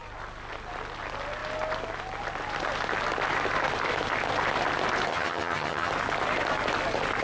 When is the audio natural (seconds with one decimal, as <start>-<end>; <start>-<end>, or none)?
0.0-5.1; 5.9-7.2